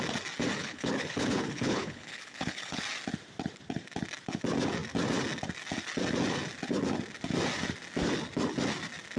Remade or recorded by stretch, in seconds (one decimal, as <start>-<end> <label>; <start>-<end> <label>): 0.0-0.6 recorded; 0.6-2.8 remade; 2.8-9.2 recorded